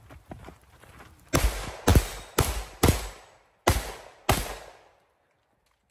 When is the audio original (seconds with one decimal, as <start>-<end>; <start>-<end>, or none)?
0.0-5.9